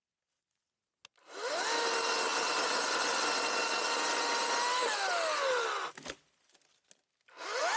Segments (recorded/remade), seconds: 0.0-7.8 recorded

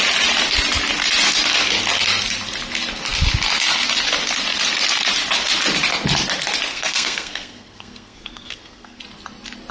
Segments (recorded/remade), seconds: 0.0-6.7 recorded; 6.7-9.0 remade; 9.0-9.7 recorded

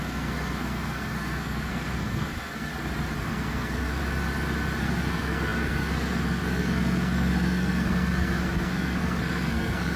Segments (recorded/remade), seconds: 0.0-2.7 remade; 2.7-3.2 recorded; 3.2-4.0 remade; 4.0-4.8 recorded; 4.8-10.0 remade

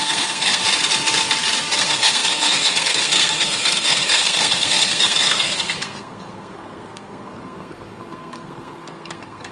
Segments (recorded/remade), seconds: 0.0-0.6 remade; 0.6-1.8 recorded; 1.8-9.5 remade

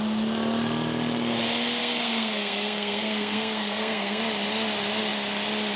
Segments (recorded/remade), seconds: 0.0-1.8 recorded; 1.8-4.2 remade; 4.2-5.8 recorded